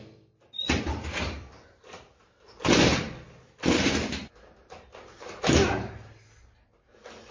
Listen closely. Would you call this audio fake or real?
real